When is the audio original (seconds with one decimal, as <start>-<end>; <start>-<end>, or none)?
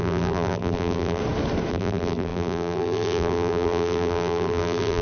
1.2-1.7